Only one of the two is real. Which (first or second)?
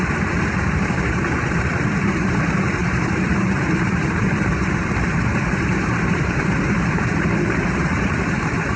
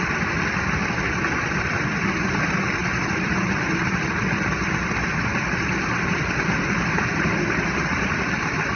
second